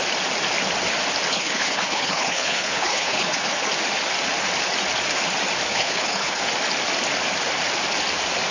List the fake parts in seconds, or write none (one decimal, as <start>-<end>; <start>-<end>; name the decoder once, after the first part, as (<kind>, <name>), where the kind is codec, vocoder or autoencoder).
1.3-3.7 (codec, HILCodec); 5.7-6.4